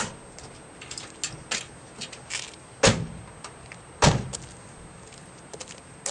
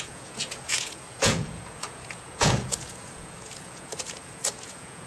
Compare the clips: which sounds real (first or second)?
first